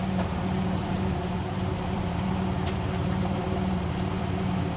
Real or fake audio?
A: fake